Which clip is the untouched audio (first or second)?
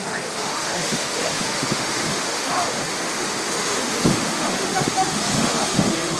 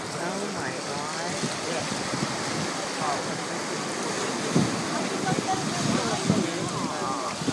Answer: second